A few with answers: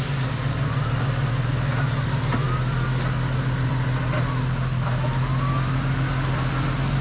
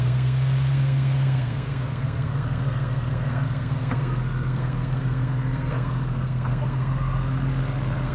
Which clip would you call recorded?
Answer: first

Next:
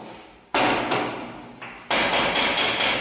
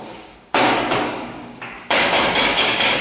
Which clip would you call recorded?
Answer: first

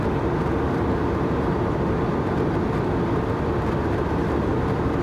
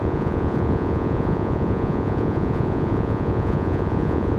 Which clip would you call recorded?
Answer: first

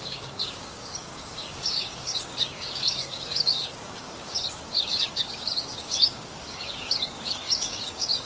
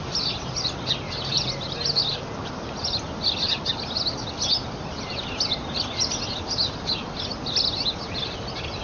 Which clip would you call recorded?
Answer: second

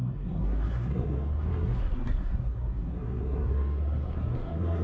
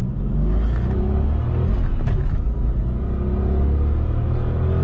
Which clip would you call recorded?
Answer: second